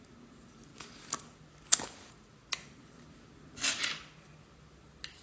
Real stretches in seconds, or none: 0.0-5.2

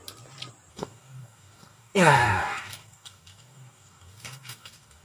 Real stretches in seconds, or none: 0.0-0.7

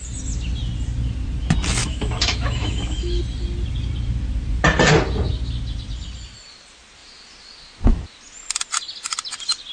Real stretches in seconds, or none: 0.0-1.8; 3.2-9.7

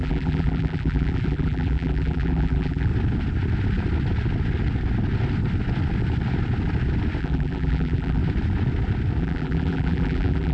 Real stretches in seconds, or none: 2.9-7.2; 8.2-9.2

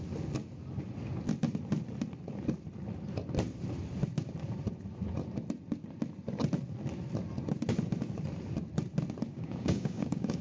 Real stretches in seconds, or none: 0.0-9.3